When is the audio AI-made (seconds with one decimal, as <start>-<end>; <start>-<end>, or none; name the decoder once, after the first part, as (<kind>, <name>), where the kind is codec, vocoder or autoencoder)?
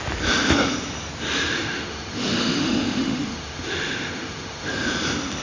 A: 1.5-4.7 (autoencoder, DAC-VAE)